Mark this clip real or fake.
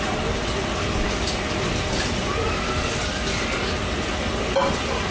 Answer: real